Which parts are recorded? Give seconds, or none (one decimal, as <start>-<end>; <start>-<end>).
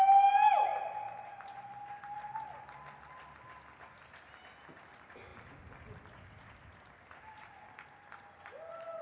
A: 0.0-9.0